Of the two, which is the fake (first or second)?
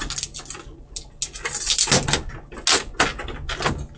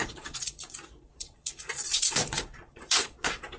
second